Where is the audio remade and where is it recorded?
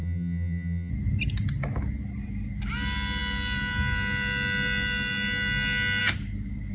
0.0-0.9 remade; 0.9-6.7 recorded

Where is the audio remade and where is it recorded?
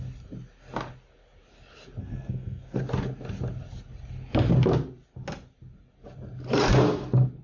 0.0-2.0 recorded; 2.0-2.8 remade; 2.8-7.4 recorded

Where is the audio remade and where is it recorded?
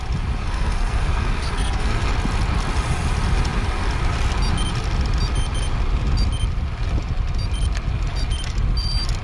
0.0-0.4 recorded; 0.4-2.1 remade; 2.1-9.2 recorded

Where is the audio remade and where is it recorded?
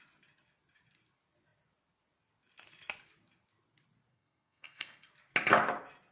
0.0-4.1 recorded; 4.1-5.1 remade; 5.1-6.1 recorded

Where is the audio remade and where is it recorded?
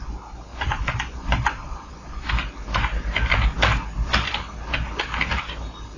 0.0-0.5 recorded; 0.5-2.3 remade; 2.3-6.0 recorded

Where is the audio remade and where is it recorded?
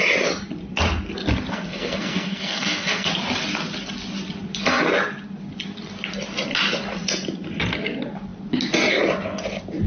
0.0-1.5 recorded; 1.5-3.1 remade; 3.1-9.9 recorded